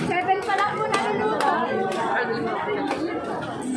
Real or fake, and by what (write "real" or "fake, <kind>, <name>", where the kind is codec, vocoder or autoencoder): real